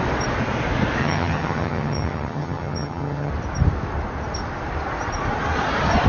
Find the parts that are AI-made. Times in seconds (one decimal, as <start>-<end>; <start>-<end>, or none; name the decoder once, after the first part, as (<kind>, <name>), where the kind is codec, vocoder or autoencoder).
1.0-3.3 (vocoder, HiFi-GAN)

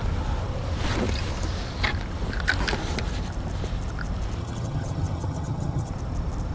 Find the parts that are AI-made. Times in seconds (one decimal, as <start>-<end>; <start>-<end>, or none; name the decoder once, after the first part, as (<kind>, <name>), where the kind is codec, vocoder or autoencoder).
4.4-5.9 (vocoder, HiFi-GAN)

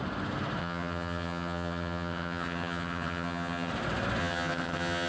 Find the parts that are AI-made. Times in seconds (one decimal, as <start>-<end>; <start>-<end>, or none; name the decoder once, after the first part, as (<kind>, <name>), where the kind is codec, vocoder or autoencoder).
0.6-3.7 (vocoder, HiFi-GAN); 4.2-5.1

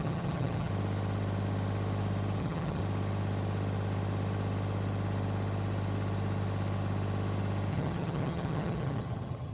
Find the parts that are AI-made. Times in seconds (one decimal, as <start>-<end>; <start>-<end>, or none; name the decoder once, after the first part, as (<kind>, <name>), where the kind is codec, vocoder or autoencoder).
0.0-0.7 (vocoder, HiFi-GAN); 2.4-2.8; 7.7-9.5